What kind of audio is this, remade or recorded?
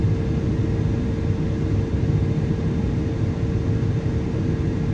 recorded